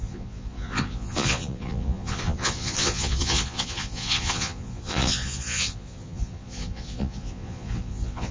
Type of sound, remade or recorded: remade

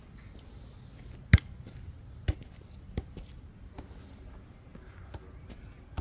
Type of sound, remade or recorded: recorded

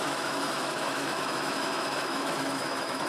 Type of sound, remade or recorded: remade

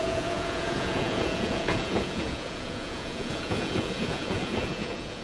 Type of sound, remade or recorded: remade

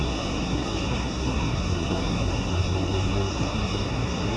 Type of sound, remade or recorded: remade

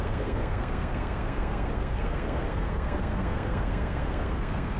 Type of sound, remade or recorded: remade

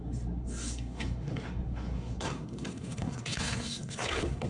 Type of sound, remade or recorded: remade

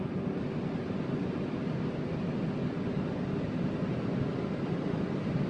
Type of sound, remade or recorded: recorded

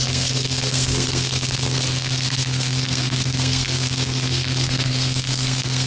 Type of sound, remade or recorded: remade